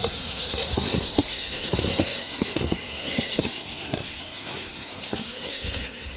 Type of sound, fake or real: fake